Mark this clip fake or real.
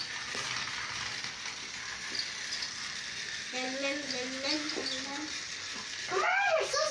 real